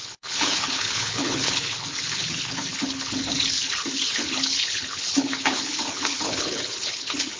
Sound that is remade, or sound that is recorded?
remade